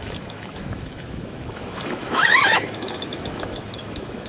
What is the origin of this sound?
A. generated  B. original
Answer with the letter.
A